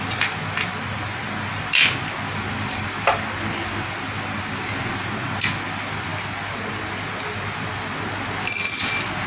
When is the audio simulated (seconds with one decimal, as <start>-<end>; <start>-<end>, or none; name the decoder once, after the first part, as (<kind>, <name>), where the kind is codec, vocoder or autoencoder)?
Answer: none

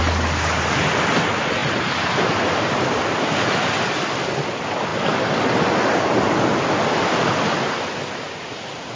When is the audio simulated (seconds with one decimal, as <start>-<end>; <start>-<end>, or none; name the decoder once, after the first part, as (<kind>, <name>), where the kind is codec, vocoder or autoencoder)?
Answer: none

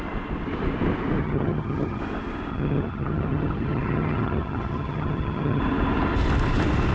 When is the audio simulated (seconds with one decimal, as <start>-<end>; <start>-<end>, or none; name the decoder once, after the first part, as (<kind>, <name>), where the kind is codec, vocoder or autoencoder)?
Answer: 1.2-2.0 (vocoder, HiFi-GAN); 2.5-5.6

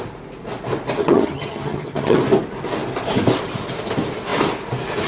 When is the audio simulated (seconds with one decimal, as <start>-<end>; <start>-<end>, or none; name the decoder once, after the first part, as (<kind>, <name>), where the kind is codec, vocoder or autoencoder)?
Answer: 1.0-2.2 (vocoder, HiFi-GAN)